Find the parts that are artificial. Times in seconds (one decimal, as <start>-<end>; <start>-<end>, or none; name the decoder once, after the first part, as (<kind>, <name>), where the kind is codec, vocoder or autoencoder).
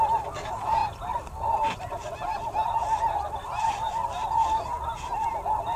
none